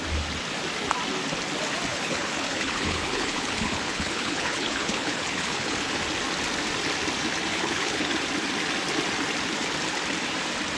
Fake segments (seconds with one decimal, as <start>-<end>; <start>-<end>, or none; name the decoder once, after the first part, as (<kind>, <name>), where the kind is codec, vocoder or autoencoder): 1.9-5.9 (codec, HILCodec); 7.5-8.1